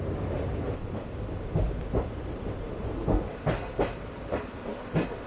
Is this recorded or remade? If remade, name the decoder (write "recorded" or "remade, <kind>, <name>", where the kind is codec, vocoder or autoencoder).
remade, vocoder, BigVGAN v2